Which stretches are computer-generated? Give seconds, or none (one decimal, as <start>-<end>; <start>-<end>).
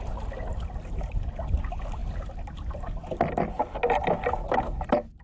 none